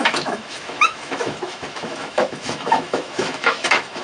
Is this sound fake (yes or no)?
yes